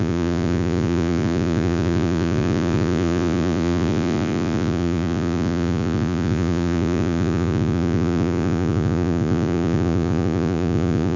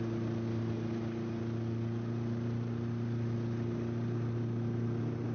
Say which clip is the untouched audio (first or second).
second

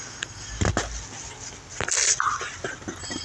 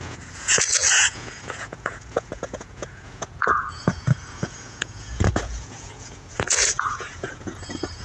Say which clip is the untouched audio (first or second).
first